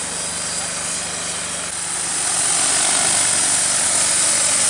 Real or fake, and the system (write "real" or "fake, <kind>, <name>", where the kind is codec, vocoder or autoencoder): real